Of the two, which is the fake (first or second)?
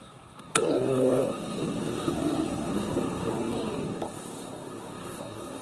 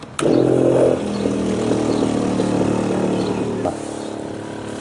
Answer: first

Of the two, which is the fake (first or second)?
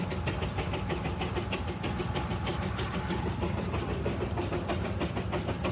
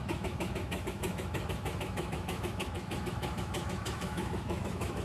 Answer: second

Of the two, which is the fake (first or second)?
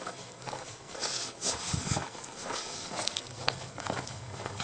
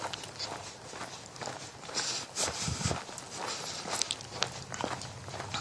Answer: first